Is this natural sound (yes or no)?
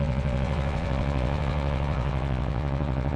no